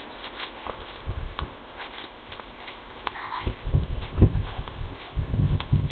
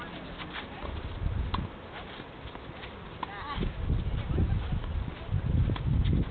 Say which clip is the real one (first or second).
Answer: second